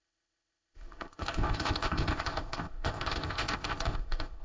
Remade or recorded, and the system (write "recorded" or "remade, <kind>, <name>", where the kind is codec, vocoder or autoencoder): remade, codec, ZipCodec